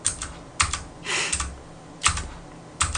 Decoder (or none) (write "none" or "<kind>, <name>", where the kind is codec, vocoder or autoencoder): none